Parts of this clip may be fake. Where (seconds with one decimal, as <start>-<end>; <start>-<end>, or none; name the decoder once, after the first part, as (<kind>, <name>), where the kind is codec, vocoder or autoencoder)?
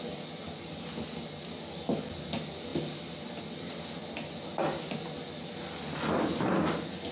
none